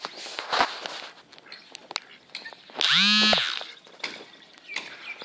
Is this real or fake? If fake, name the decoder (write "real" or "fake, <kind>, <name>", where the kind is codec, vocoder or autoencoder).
real